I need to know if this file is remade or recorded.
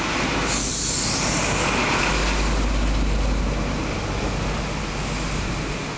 recorded